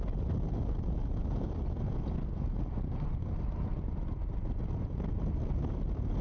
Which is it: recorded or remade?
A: recorded